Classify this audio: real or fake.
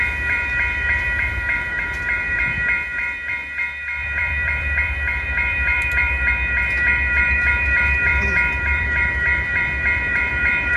fake